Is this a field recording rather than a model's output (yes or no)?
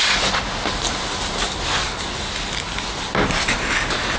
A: yes